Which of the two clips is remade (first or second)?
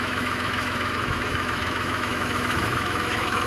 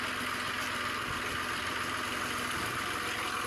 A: first